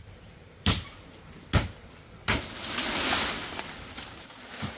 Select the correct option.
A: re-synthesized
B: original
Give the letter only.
B